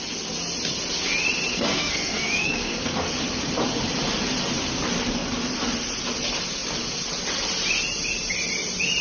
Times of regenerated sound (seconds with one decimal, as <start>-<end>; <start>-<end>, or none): 1.5-3.1